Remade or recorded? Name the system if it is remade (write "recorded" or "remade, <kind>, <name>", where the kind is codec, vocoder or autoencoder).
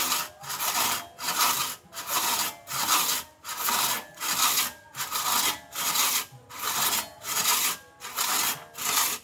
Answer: recorded